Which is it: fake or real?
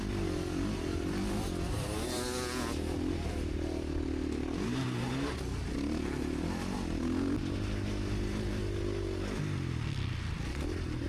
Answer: real